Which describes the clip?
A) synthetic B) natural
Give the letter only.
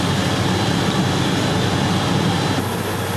B